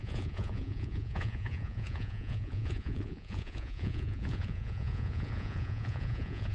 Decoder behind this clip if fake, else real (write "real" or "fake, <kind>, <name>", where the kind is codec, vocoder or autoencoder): fake, vocoder, Vocos